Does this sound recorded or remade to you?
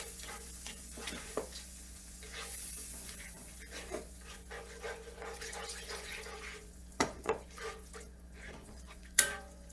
remade